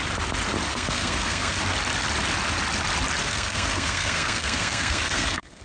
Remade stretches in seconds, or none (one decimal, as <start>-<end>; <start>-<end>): 0.7-1.6; 3.2-5.6